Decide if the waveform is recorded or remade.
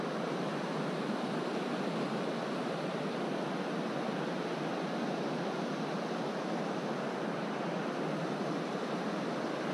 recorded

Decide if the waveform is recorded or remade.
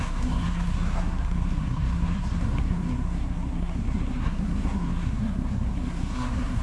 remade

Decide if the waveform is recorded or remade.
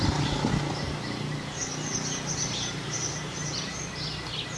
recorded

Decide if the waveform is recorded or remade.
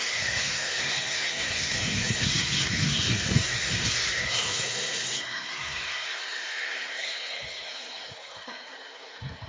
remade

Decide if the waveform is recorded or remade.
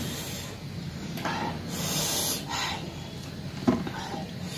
recorded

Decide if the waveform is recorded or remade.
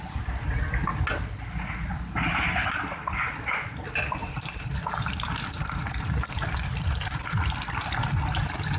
recorded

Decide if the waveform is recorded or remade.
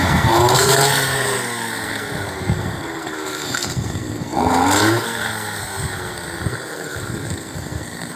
remade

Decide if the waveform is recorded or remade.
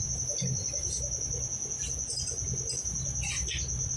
recorded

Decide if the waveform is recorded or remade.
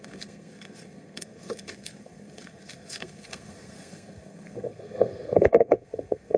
remade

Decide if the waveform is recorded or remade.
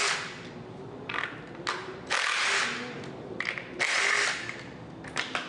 recorded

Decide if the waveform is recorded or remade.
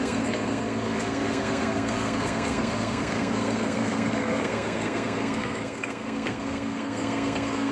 remade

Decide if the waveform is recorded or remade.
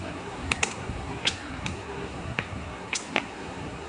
remade